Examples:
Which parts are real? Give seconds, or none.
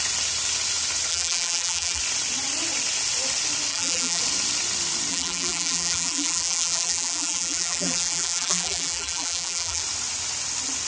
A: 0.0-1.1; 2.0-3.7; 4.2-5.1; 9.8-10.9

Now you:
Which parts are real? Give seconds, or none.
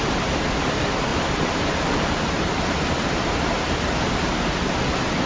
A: 0.0-1.1; 4.3-5.3